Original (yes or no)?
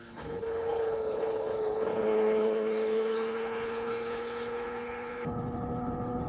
no